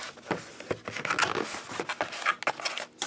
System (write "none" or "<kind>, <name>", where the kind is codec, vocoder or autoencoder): none